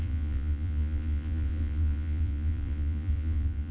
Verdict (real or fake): fake